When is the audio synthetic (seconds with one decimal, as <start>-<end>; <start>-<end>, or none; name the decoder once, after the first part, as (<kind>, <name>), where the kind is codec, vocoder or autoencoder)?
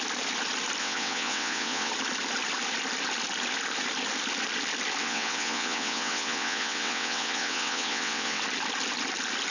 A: 0.8-1.9 (vocoder, WaveNeXt); 5.0-8.4